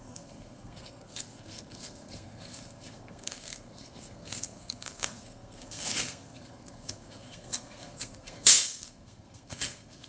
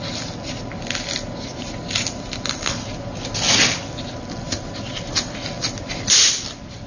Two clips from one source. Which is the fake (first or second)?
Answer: first